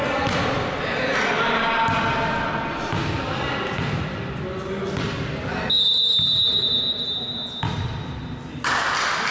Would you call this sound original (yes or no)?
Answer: yes